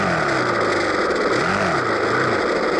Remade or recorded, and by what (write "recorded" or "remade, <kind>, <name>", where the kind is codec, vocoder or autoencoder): recorded